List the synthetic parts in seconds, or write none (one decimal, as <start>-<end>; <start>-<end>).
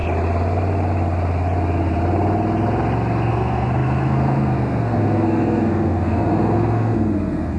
3.3-7.6